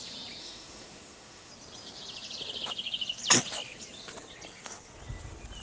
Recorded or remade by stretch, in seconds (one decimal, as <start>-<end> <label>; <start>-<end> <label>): 0.0-0.4 recorded; 0.4-1.5 remade; 1.5-5.6 recorded